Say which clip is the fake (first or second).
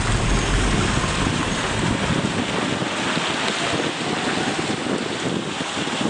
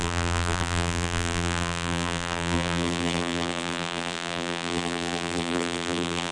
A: second